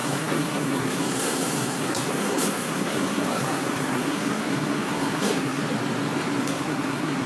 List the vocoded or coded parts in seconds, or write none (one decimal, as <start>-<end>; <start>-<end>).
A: 0.0-5.6; 6.4-7.3